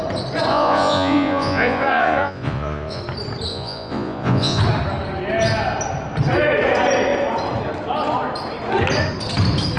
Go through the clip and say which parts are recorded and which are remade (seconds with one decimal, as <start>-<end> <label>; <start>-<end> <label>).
0.0-0.5 recorded; 0.5-3.0 remade; 3.0-3.5 recorded; 3.5-4.6 remade; 4.6-9.8 recorded